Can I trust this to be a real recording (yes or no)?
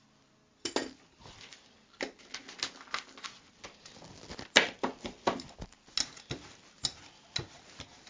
yes